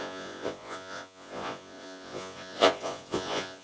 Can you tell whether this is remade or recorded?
remade